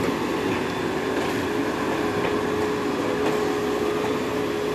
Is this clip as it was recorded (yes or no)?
yes